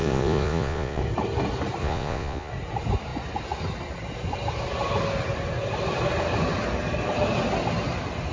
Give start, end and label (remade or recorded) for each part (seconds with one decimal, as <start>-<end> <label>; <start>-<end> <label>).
0.0-1.0 remade; 1.0-1.8 recorded; 1.8-2.5 remade; 2.5-8.3 recorded